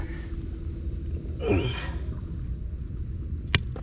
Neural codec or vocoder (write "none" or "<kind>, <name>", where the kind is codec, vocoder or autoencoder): none